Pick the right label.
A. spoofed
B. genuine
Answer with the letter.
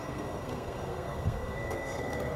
A